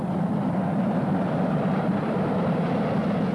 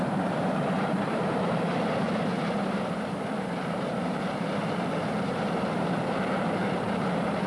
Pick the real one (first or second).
first